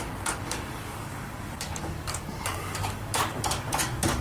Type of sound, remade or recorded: remade